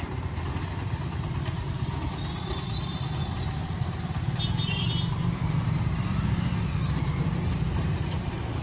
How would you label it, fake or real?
real